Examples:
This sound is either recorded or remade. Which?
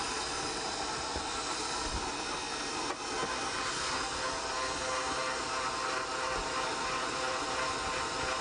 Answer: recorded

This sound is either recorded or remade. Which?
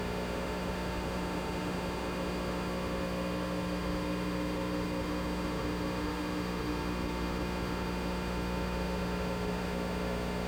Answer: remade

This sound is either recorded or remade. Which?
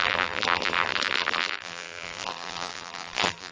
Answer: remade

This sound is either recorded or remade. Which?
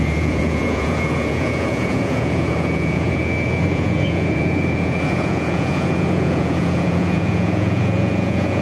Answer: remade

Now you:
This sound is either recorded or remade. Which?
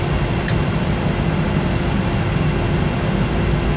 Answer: recorded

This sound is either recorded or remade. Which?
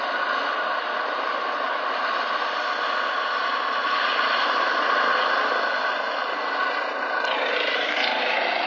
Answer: recorded